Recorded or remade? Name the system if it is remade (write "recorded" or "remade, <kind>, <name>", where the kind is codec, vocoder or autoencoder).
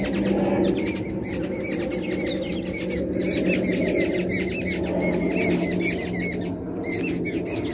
recorded